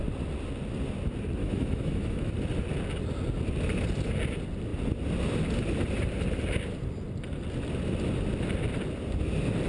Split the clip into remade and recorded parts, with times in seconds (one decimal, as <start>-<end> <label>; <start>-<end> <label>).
0.0-1.4 recorded; 1.4-2.3 remade; 2.3-9.7 recorded